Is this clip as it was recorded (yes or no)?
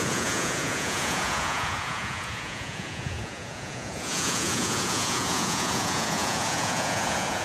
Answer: no